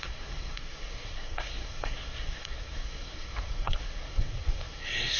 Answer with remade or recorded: remade